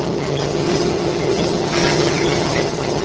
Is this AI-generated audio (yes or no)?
yes